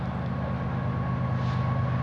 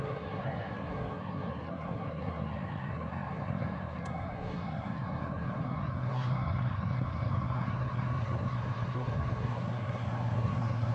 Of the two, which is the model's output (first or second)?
second